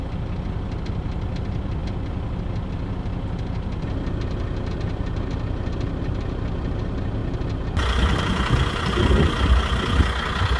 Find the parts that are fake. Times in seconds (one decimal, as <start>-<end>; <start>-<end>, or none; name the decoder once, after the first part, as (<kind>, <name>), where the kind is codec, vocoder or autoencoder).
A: none